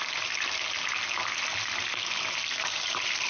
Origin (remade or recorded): recorded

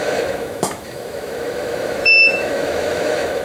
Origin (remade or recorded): remade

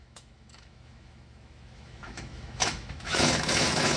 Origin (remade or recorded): remade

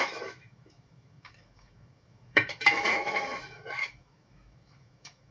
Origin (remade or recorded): remade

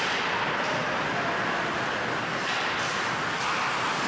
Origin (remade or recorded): recorded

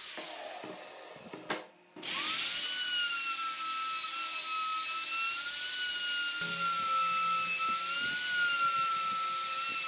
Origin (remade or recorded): recorded